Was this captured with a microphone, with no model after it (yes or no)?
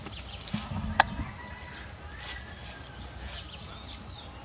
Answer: yes